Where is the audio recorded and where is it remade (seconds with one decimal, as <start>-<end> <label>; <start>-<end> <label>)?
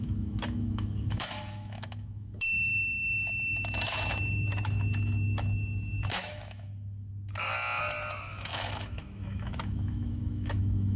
0.0-6.7 remade; 6.7-8.1 recorded; 8.1-11.0 remade